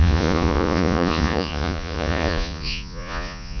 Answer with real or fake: fake